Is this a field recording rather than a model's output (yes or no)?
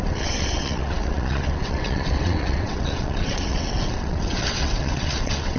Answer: no